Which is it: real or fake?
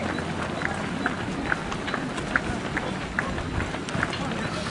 real